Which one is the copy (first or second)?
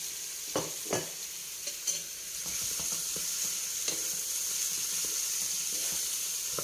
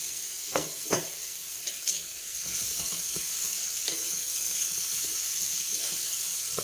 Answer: second